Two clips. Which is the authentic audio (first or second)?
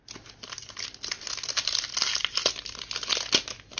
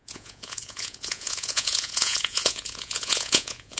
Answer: first